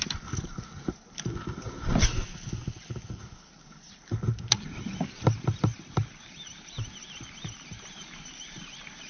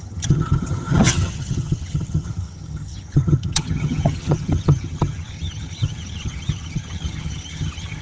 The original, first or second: first